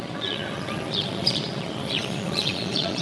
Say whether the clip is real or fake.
fake